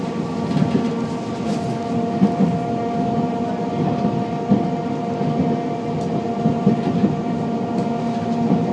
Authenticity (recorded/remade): recorded